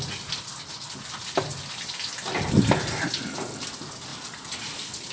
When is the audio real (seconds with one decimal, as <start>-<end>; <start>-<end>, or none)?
0.0-5.1